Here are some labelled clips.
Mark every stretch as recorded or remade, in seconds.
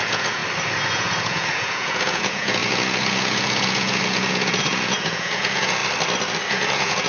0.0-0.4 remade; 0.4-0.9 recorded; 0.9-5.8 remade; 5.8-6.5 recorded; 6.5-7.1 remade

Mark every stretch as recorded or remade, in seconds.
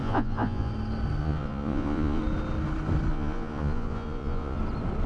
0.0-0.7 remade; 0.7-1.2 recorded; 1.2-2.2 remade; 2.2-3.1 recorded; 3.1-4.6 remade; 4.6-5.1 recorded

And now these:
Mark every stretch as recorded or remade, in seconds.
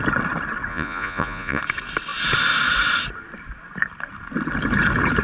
0.0-0.7 recorded; 0.7-1.6 remade; 1.6-5.2 recorded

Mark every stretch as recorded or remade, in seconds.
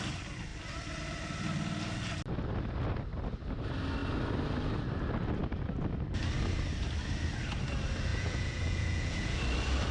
0.0-8.1 recorded; 8.1-9.4 remade; 9.4-9.9 recorded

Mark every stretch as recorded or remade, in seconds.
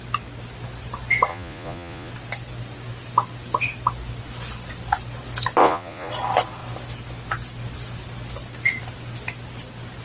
0.0-1.3 recorded; 1.3-2.1 remade; 2.1-5.6 recorded; 5.6-6.1 remade; 6.1-10.0 recorded